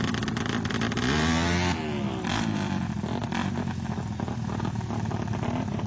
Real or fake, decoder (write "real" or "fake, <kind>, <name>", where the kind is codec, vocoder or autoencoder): real